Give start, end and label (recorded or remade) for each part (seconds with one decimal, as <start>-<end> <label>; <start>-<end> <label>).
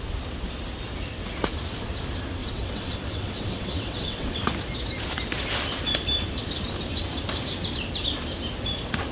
0.0-2.4 recorded; 2.4-4.5 remade; 4.5-9.1 recorded